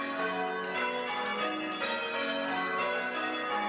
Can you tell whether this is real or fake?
real